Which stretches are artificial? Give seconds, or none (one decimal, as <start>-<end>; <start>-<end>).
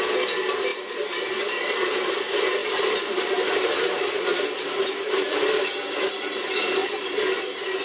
0.0-4.3; 4.8-6.8